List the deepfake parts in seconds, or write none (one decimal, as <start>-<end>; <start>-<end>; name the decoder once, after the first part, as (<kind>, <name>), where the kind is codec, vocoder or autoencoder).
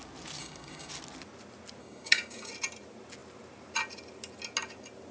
0.4-0.9 (codec, DAC); 1.8-2.5